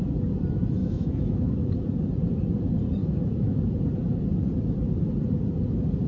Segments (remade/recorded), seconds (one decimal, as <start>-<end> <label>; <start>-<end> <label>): 0.0-0.8 recorded; 0.8-1.7 remade; 1.7-3.0 recorded; 3.0-3.6 remade; 3.6-6.1 recorded